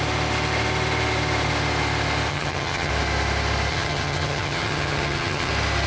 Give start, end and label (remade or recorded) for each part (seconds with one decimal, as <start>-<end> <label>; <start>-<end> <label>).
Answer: 0.0-2.3 recorded; 2.3-2.9 remade; 2.9-3.7 recorded; 3.7-5.5 remade; 5.5-5.9 recorded